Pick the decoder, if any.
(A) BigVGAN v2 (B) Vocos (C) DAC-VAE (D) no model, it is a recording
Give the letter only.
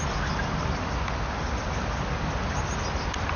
D